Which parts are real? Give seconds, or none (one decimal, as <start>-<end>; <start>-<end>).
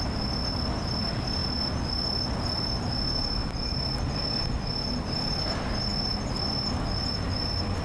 0.0-7.8